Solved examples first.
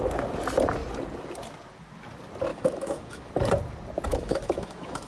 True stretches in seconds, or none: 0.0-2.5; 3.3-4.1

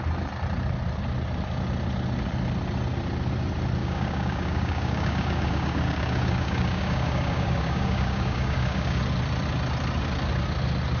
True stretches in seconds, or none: 0.0-3.8; 9.0-11.0

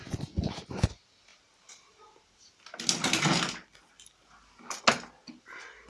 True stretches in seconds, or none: 0.0-5.9

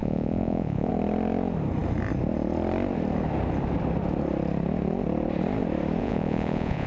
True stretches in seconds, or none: 0.9-6.0

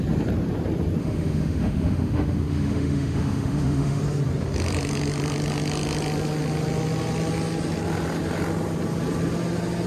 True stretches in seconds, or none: 0.0-1.0; 4.0-9.9

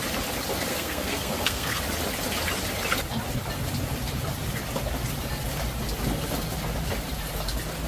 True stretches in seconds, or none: 0.0-0.7; 1.8-7.9